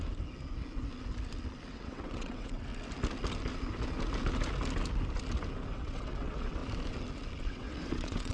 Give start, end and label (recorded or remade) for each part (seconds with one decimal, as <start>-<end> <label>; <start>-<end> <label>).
0.0-1.7 recorded; 1.7-2.7 remade; 2.7-5.7 recorded; 5.7-6.6 remade; 6.6-7.4 recorded; 7.4-8.3 remade